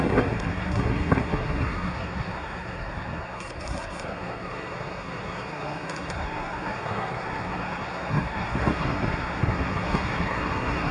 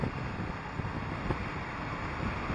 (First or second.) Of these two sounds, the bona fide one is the second